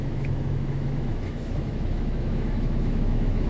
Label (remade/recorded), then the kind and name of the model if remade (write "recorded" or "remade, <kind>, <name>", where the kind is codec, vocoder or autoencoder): remade, autoencoder, DAC-VAE